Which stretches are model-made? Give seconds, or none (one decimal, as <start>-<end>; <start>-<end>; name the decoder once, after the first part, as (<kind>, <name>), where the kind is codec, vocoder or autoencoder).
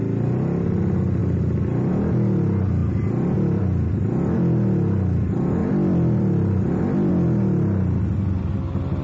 5.6-7.1 (vocoder, BigVGAN v2)